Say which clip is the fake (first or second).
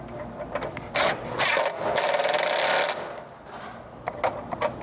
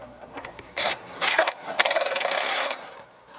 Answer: second